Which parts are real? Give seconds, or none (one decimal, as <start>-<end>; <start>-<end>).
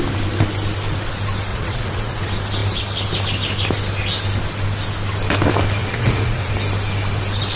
0.0-1.5; 2.2-5.8; 6.5-7.6